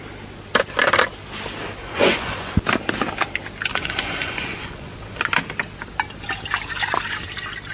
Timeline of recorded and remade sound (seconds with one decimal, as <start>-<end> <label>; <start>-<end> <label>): 0.0-1.8 recorded; 1.8-2.5 remade; 2.5-3.7 recorded; 3.7-5.2 remade; 5.2-7.7 recorded